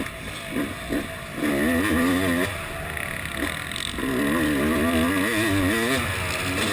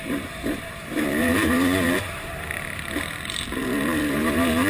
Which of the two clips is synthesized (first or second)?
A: second